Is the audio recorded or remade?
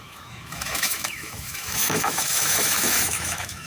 remade